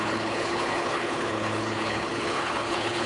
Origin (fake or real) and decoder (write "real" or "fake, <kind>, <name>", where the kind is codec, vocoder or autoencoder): fake, codec, HILCodec